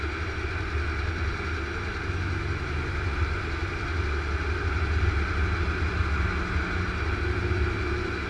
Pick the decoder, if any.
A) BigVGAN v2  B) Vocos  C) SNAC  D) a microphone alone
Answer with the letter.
D